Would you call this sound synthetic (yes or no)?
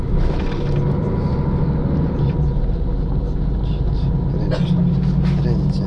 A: no